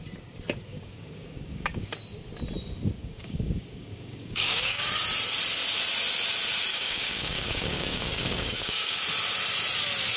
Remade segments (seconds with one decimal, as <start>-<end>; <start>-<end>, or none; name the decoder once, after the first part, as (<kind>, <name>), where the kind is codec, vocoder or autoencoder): 0.7-1.9 (codec, DAC); 3.0-4.9; 6.7-9.0